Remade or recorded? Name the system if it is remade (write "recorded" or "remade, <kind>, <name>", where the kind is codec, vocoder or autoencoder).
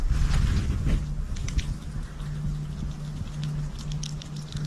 recorded